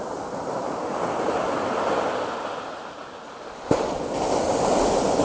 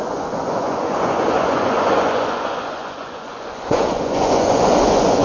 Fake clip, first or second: second